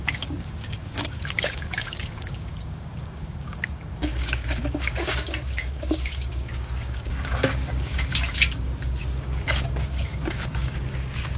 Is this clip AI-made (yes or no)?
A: yes